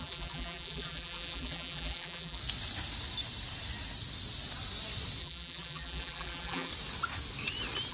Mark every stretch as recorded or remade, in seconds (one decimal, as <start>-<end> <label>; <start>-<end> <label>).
0.0-2.4 remade; 2.4-5.2 recorded; 5.2-6.7 remade; 6.7-7.9 recorded